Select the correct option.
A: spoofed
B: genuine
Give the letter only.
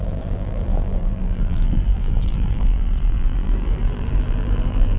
A